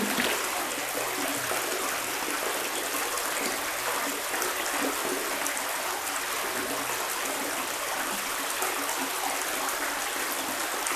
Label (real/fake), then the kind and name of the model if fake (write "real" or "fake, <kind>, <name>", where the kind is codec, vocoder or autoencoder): real